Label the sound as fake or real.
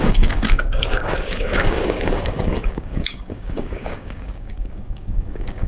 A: fake